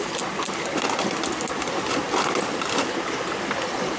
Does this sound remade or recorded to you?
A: recorded